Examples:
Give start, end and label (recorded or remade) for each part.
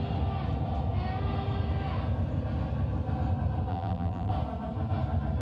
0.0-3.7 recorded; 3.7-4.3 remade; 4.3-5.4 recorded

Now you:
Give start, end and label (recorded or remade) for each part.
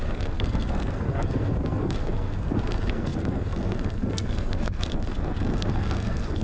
0.0-6.4 remade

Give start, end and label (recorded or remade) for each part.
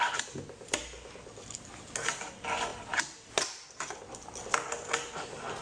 0.0-5.6 recorded